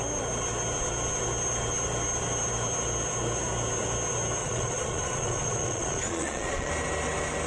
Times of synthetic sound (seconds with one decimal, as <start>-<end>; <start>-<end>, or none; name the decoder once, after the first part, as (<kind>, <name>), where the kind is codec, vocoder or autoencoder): 4.4-6.7 (vocoder, Vocos)